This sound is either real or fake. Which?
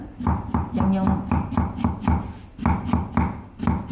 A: real